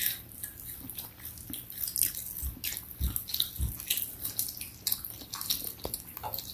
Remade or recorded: recorded